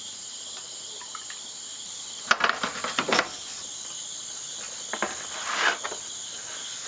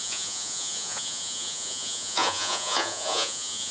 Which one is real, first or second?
first